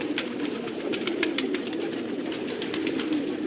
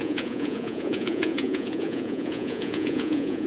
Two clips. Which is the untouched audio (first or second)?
first